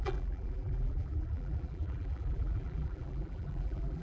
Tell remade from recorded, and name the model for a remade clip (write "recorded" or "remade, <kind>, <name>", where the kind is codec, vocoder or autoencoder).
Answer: remade, vocoder, BigVGAN v2